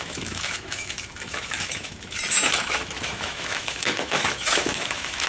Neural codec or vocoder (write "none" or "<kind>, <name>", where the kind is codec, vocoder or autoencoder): autoencoder, DAC-VAE